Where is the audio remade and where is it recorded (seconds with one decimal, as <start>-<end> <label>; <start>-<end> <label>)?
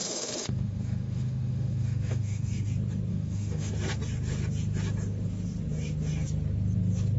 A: 0.0-2.7 remade; 2.7-3.1 recorded; 3.1-3.7 remade; 3.7-7.2 recorded